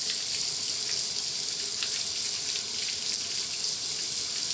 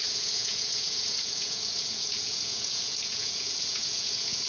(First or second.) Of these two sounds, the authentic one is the first